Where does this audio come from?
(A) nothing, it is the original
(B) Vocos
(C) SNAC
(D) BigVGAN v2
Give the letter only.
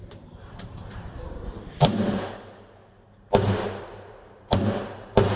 D